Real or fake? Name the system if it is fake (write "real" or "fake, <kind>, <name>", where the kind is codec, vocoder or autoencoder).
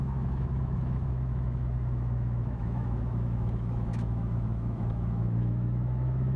fake, autoencoder, DAC-VAE